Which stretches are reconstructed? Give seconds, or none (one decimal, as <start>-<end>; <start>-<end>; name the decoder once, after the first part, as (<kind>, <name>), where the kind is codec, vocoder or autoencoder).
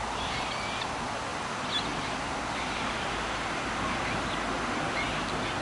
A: none